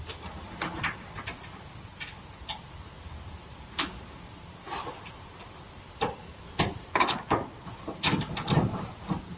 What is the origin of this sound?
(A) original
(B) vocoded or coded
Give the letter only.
A